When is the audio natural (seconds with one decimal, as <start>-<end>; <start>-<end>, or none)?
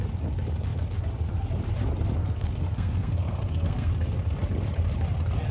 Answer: 0.0-2.2; 3.9-5.5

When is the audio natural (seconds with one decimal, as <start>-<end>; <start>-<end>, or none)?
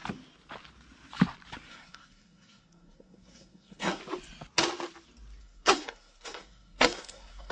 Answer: 0.0-1.7; 4.0-5.4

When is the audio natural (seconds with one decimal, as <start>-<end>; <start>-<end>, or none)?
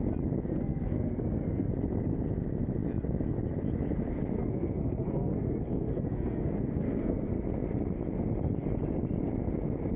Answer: 0.0-0.5; 1.7-4.4; 7.3-10.0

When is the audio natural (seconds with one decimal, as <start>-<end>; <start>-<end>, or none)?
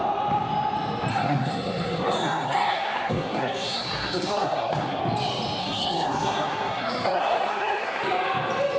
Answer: 0.0-1.1; 5.0-5.6; 8.0-8.8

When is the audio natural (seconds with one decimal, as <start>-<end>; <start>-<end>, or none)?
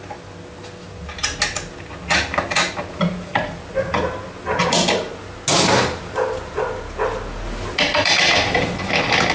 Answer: 0.0-9.3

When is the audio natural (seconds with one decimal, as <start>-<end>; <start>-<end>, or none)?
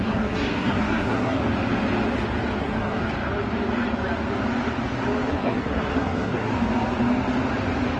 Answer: 1.4-2.6; 3.0-5.3; 6.5-8.0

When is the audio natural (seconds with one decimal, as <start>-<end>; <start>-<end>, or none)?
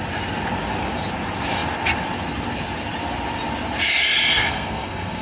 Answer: 0.0-4.3